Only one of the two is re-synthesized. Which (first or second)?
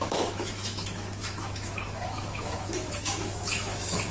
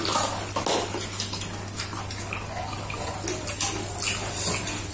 first